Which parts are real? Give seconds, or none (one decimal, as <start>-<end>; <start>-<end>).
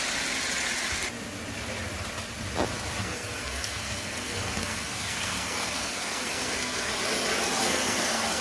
0.0-3.0; 6.9-7.6